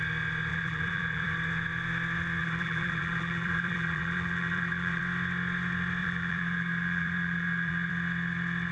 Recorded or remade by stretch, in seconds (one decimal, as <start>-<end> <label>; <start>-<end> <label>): 0.0-0.5 recorded; 0.5-1.3 remade; 1.3-2.4 recorded; 2.4-5.0 remade; 5.0-6.0 recorded; 6.0-7.9 remade; 7.9-8.7 recorded